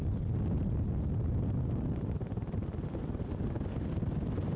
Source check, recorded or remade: recorded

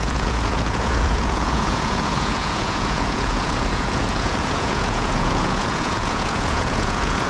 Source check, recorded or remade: remade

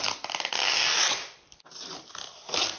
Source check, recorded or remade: recorded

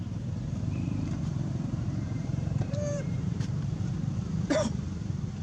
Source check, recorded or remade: remade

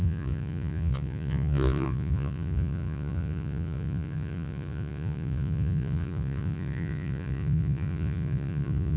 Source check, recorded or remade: remade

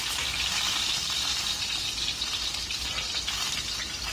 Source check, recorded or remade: remade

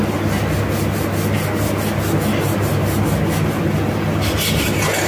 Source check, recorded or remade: recorded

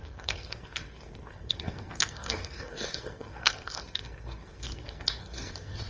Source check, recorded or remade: remade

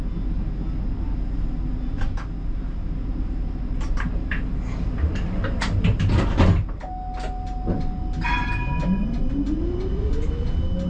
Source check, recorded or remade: recorded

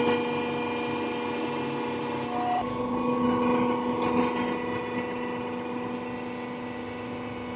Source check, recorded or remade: recorded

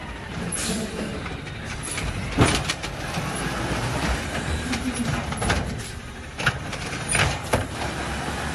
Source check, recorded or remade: remade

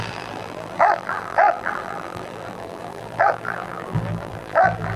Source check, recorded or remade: remade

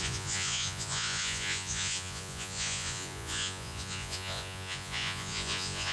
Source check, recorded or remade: remade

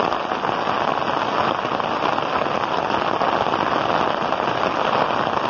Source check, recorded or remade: recorded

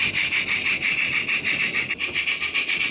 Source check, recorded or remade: recorded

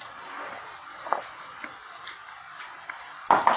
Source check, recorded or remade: recorded